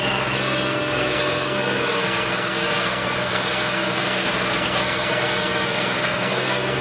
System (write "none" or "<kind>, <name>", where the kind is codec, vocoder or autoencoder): codec, SNAC